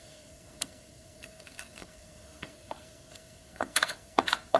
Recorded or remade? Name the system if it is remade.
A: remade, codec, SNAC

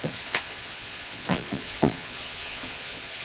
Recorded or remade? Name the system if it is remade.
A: remade, vocoder, Vocos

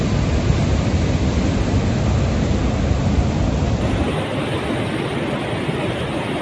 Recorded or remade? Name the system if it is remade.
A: recorded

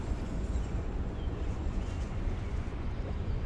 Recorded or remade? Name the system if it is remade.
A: remade, vocoder, Vocos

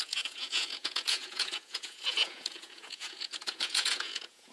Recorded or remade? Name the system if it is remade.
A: remade, vocoder, Vocos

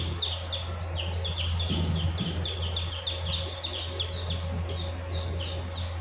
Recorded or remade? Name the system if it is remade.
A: recorded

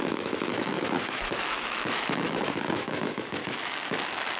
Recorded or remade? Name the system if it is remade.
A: remade, autoencoder, DAC-VAE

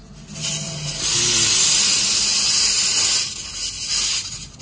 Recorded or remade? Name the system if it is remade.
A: recorded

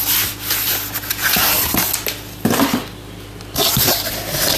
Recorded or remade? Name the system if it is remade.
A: recorded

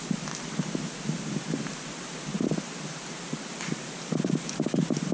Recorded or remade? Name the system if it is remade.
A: recorded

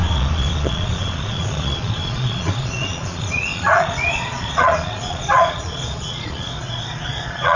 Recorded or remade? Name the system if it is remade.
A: remade, vocoder, Vocos